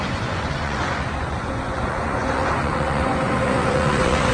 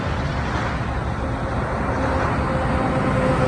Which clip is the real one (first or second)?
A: second